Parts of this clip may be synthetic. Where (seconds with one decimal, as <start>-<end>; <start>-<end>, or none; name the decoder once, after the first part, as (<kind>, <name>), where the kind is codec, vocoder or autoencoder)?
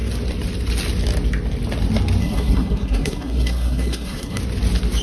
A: 2.2-4.4 (codec, SNAC)